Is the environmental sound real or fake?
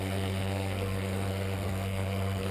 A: fake